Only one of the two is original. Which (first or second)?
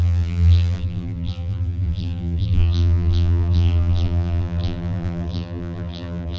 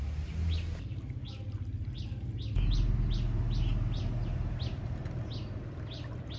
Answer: second